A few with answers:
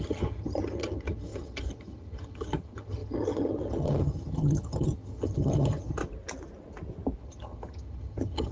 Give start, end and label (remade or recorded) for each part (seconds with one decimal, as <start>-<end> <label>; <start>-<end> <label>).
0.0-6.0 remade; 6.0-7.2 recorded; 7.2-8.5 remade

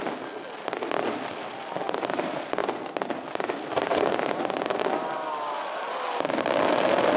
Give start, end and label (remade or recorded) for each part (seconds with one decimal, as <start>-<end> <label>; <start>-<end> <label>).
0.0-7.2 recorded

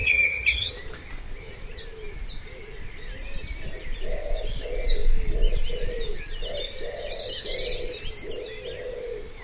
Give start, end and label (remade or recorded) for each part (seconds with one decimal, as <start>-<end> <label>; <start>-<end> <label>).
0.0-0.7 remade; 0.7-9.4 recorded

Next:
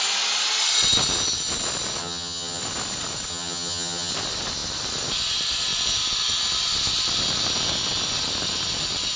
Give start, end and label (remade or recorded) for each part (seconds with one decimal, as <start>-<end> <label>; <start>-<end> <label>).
0.0-2.0 recorded; 2.0-2.6 remade; 2.6-3.3 recorded; 3.3-4.1 remade; 4.1-9.2 recorded